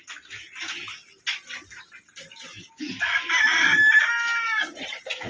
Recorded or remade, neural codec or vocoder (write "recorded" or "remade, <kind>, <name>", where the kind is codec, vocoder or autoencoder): recorded